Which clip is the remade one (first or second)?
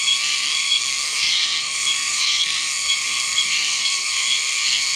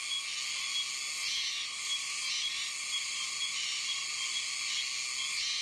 first